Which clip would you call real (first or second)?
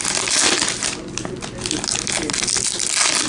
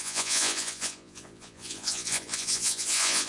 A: first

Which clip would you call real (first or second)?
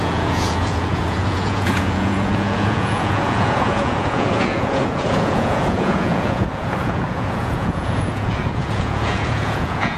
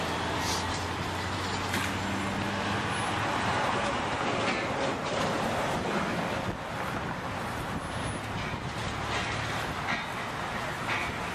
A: second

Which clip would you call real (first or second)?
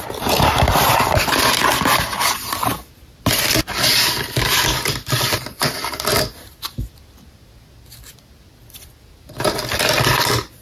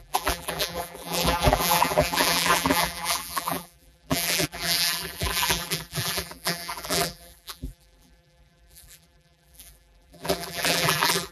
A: first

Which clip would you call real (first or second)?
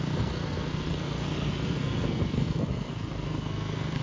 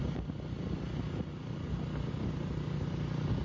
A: second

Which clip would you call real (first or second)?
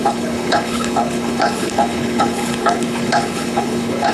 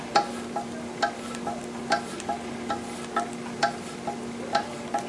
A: second